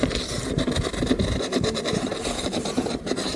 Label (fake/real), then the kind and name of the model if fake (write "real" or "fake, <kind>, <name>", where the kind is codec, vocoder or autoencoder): real